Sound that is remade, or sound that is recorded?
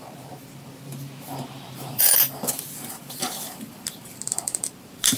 remade